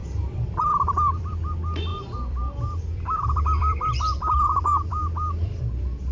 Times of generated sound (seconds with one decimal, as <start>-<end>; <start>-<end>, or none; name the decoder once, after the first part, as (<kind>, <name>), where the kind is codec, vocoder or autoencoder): 0.0-1.5 (vocoder, BigVGAN v2); 1.9-5.6